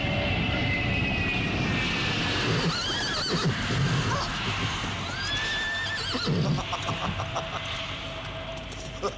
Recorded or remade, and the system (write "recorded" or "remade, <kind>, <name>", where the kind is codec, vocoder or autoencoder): recorded